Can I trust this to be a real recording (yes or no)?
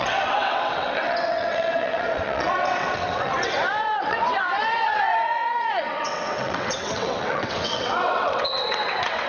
no